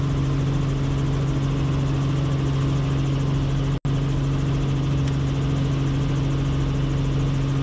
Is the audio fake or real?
real